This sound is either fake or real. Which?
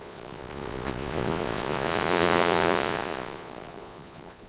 fake